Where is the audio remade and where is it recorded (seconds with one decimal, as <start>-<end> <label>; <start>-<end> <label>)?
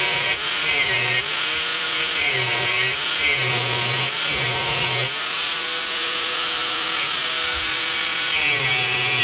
0.0-9.2 recorded